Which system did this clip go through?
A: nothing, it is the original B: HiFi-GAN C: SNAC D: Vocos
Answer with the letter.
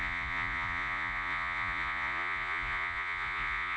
D